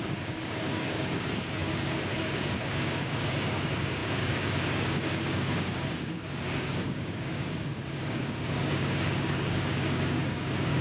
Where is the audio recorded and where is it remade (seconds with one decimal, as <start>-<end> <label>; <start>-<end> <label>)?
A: 0.0-10.8 remade